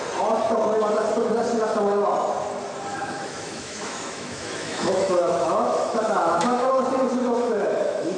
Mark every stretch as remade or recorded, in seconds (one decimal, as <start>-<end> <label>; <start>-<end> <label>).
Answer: 0.0-2.9 recorded; 2.9-6.7 remade; 6.7-7.2 recorded; 7.2-8.2 remade